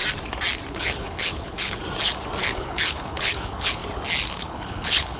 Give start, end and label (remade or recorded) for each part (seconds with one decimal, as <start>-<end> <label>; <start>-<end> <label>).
0.0-0.7 recorded; 0.7-1.8 remade; 1.8-2.4 recorded; 2.4-3.8 remade; 3.8-4.3 recorded; 4.3-5.2 remade